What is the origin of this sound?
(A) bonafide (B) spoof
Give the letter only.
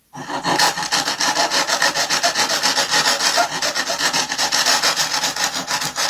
A